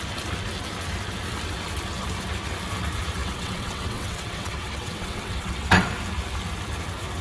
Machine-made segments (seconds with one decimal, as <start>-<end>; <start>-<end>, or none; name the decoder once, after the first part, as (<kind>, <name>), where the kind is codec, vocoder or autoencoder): 3.2-5.9 (vocoder, WaveNeXt)